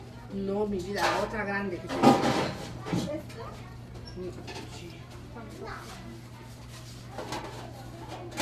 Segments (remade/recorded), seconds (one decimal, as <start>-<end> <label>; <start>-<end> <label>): 0.0-8.4 recorded

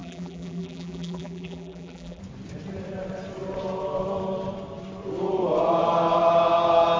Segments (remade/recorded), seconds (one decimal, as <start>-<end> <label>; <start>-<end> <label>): 0.0-2.2 remade; 2.2-7.0 recorded

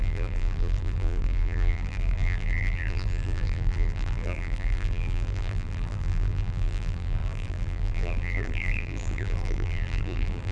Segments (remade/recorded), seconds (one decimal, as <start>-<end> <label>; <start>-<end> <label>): 0.0-10.5 remade

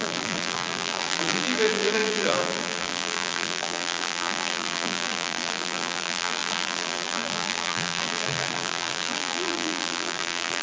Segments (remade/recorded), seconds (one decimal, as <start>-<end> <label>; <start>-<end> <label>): 0.0-10.6 remade

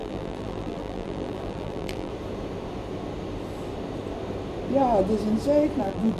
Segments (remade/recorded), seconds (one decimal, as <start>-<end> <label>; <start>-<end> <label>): 0.0-2.1 remade; 2.1-5.8 recorded; 5.8-6.2 remade